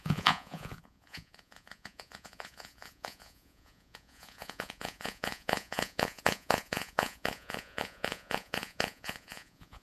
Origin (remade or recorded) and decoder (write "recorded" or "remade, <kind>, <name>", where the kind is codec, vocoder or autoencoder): remade, vocoder, Vocos